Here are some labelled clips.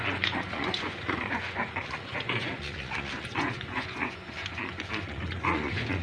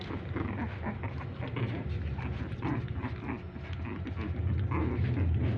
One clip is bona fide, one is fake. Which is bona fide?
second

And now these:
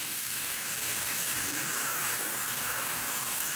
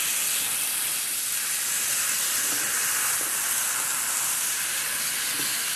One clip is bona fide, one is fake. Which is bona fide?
second